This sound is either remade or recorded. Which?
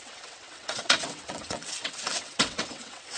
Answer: remade